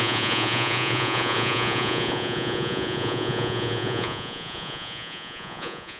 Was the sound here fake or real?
fake